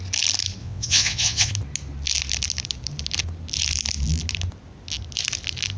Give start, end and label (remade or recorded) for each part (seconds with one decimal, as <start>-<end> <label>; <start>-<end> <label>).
0.0-0.6 recorded; 0.6-1.5 remade; 1.5-5.8 recorded